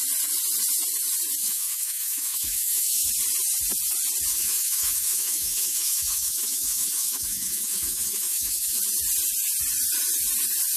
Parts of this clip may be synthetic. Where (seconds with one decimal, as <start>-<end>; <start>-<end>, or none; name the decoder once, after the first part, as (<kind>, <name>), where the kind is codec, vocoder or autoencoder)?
1.4-3.1 (autoencoder, DAC-VAE); 4.3-8.8